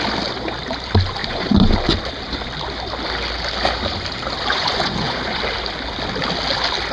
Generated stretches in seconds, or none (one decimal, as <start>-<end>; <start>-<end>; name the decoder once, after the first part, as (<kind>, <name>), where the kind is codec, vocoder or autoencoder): 1.2-1.7 (vocoder, Vocos); 4.5-5.4